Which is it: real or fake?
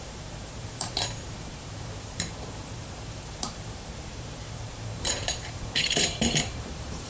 fake